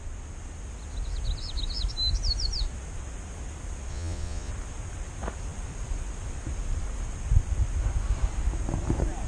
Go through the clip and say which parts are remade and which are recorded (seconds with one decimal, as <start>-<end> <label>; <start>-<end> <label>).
0.0-3.9 recorded; 3.9-4.5 remade; 4.5-9.3 recorded